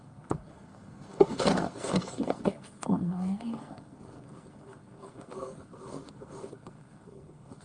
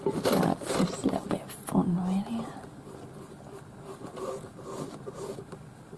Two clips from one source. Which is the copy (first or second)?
first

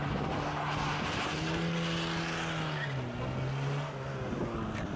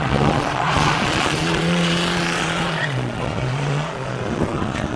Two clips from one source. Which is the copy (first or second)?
second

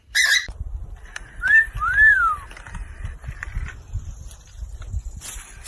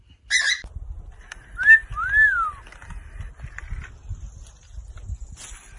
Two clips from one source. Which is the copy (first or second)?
first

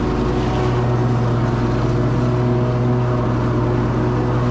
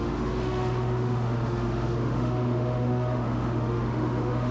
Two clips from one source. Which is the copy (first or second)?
second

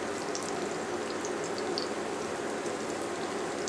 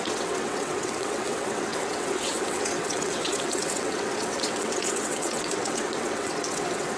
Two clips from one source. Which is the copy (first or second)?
second